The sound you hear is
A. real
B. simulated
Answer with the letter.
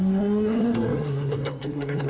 B